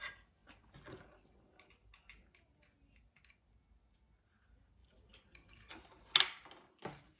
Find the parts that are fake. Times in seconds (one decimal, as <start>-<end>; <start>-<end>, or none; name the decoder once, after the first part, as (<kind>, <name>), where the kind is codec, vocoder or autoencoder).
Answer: 4.8-5.7 (vocoder, BigVGAN v2)